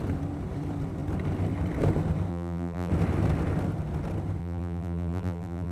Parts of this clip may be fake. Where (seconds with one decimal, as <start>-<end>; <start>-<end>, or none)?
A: 2.3-2.9; 4.4-5.7